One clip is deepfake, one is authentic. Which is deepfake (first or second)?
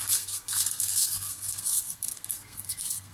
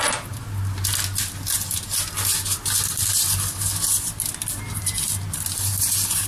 first